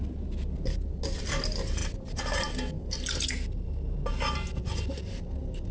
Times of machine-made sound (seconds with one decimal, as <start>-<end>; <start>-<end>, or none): none

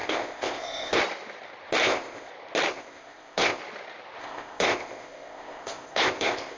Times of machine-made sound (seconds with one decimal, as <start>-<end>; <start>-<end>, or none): 0.0-1.0; 1.8-2.3; 2.7-3.6; 4.2-6.6

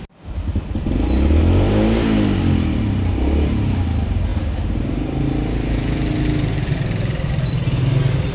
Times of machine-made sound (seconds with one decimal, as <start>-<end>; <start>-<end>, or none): none

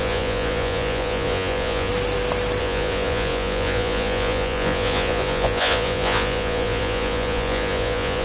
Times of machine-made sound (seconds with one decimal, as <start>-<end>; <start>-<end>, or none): 0.0-1.9; 2.6-8.2

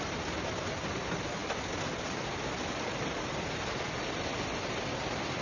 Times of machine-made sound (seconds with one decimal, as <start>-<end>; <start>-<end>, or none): none

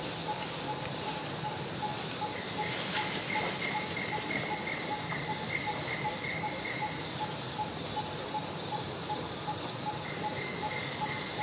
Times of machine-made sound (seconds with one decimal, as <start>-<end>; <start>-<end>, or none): none

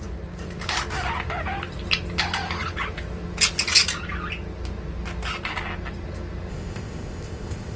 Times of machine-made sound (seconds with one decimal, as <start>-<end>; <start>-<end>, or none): 6.5-7.8